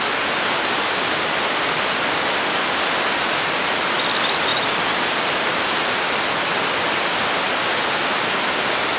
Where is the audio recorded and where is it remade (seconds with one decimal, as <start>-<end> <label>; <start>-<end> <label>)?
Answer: 0.0-4.5 recorded; 4.5-7.8 remade; 7.8-9.0 recorded